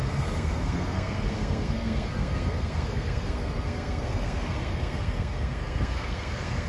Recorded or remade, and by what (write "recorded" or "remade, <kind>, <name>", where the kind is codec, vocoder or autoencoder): remade, codec, SNAC